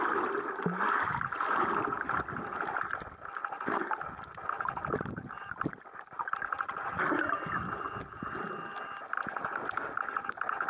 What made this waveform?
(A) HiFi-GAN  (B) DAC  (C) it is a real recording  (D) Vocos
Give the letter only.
C